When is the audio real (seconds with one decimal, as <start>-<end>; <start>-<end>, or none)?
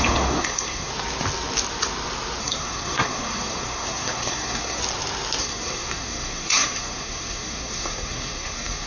0.9-2.4; 4.8-5.4